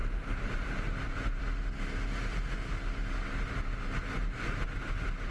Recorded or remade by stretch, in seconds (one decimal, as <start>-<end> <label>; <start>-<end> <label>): 0.0-1.4 remade; 1.4-5.3 recorded